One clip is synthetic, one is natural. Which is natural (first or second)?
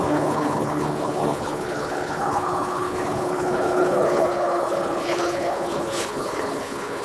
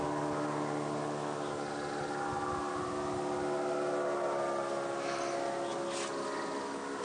second